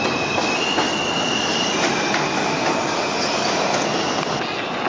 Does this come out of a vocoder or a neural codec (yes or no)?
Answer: no